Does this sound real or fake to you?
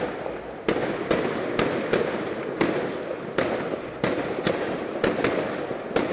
real